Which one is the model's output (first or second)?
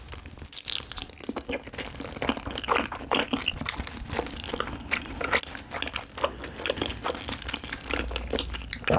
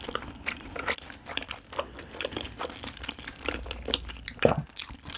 second